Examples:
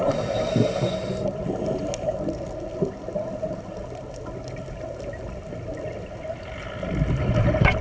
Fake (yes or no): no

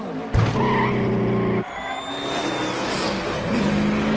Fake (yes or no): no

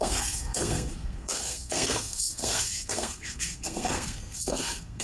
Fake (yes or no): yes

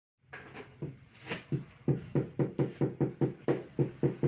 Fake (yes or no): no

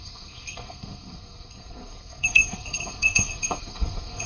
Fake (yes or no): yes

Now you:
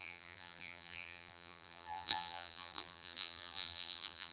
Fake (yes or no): yes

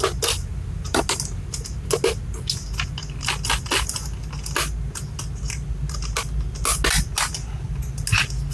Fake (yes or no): no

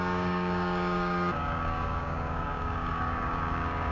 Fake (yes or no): yes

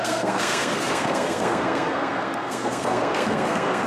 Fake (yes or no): yes